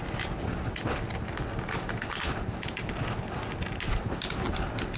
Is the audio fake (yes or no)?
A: no